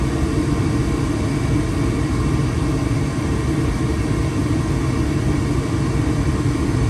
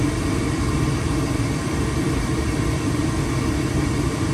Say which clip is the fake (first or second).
second